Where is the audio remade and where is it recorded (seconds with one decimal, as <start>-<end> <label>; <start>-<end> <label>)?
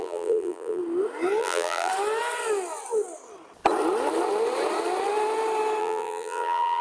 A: 0.0-0.8 remade; 0.8-1.4 recorded; 1.4-1.9 remade; 1.9-5.8 recorded; 5.8-6.8 remade